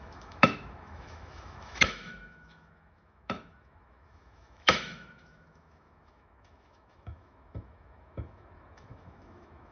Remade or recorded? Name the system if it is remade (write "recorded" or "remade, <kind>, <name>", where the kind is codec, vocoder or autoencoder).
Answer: remade, autoencoder, DAC-VAE